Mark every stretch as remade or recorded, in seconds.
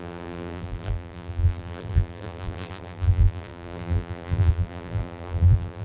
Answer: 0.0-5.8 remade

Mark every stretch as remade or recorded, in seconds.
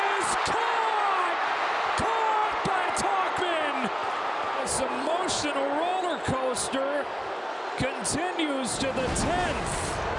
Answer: 0.0-2.4 recorded; 2.4-3.4 remade; 3.4-4.0 recorded; 4.0-5.1 remade; 5.1-10.2 recorded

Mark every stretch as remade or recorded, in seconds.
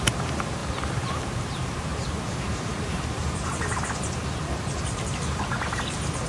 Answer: 0.0-6.3 remade